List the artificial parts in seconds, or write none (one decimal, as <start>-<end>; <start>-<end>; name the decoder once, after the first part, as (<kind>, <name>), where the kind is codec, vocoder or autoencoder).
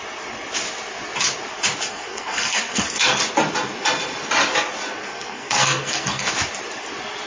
1.8-3.2 (codec, SNAC); 5.0-6.3